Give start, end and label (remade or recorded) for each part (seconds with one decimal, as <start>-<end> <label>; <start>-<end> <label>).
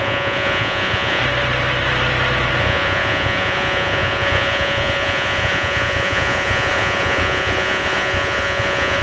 0.0-1.2 remade; 1.2-2.6 recorded; 2.6-9.0 remade